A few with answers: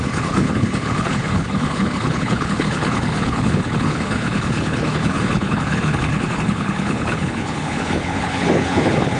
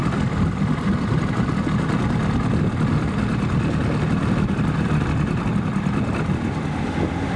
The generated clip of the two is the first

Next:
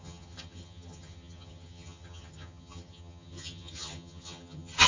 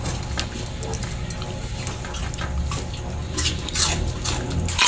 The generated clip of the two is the first